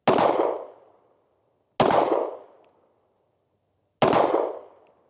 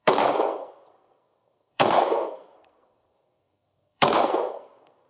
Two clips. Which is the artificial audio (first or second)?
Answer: second